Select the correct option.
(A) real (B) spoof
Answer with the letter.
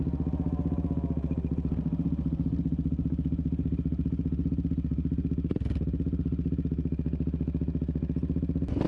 A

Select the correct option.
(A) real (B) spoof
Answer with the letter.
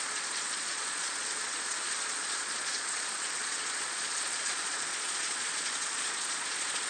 B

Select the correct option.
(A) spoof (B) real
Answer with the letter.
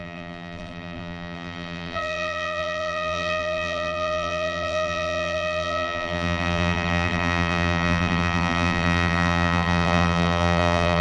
A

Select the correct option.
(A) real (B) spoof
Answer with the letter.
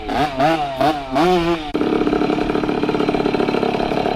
A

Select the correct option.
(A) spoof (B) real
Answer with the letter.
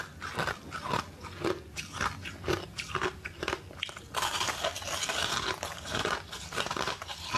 B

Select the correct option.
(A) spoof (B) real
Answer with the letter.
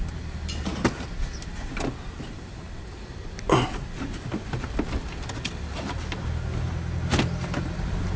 B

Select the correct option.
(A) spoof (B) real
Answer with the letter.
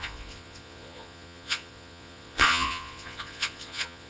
A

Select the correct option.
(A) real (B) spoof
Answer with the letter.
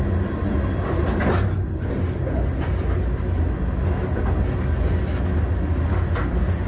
A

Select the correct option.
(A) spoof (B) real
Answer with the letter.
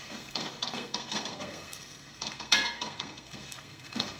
A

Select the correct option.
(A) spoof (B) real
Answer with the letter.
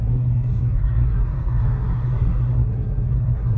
A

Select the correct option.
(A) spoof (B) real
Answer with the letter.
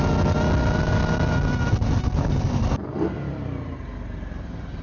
B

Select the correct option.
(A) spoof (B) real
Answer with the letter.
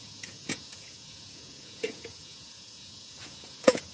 A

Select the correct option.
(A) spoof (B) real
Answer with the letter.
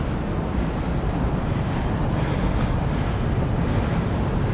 B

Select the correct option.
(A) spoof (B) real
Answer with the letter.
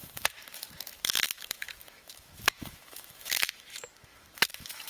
A